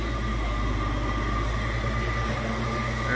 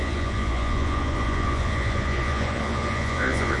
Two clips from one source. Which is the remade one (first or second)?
second